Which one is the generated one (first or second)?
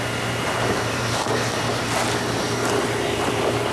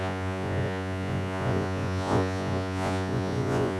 second